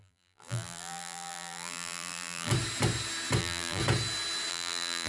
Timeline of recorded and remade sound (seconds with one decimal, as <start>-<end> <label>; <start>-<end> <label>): 0.0-2.5 remade; 2.5-3.4 recorded; 3.4-3.8 remade; 3.8-4.5 recorded; 4.5-5.1 remade